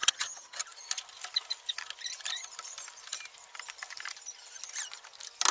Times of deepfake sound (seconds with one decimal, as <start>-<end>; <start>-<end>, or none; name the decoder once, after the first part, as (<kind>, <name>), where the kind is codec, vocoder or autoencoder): 0.0-0.6 (vocoder, HiFi-GAN)